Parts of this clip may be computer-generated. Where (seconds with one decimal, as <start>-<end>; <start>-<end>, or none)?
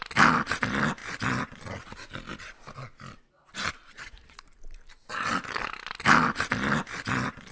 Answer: none